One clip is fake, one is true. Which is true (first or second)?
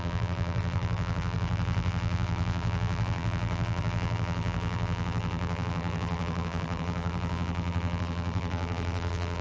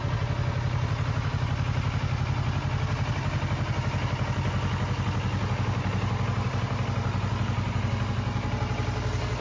second